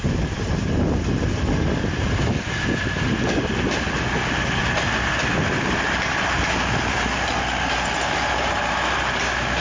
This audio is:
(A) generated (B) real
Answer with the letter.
B